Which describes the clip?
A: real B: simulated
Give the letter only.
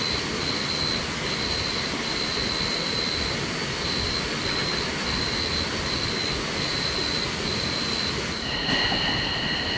A